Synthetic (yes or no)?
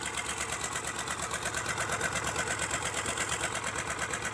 no